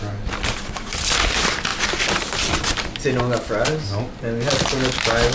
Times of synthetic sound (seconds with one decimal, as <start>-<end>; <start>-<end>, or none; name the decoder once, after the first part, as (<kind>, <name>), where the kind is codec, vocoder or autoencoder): none